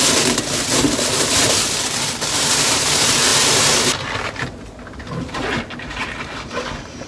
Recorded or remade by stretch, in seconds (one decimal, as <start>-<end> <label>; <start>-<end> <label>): 0.0-7.1 recorded